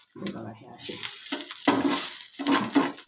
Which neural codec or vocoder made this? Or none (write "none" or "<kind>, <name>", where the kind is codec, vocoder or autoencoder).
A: none